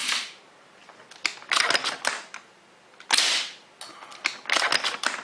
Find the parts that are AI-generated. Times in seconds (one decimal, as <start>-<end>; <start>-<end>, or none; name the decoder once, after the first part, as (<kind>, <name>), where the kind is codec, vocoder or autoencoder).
none